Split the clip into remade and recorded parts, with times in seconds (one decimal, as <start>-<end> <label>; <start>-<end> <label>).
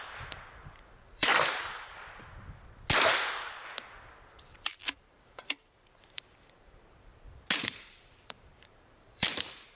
0.0-1.3 remade; 1.3-4.2 recorded; 4.2-7.1 remade; 7.1-7.6 recorded; 7.6-9.8 remade